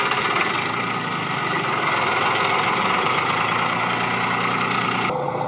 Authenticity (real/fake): real